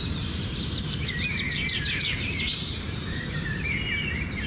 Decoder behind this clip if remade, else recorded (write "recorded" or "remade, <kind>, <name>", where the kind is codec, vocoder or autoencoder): remade, vocoder, BigVGAN v2